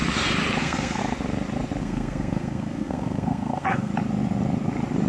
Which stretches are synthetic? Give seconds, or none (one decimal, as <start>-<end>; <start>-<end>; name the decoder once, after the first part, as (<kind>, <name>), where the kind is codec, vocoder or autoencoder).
0.6-1.0 (codec, SNAC); 1.8-3.9